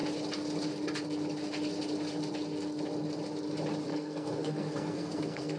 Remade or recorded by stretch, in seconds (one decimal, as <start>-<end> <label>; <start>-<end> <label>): 0.0-3.9 recorded; 3.9-5.6 remade